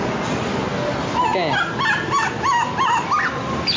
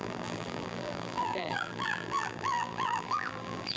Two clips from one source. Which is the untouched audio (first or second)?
first